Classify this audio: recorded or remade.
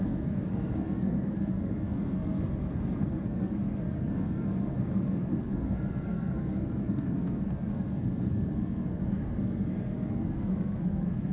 remade